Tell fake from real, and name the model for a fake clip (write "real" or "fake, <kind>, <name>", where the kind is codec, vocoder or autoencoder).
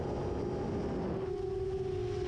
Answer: real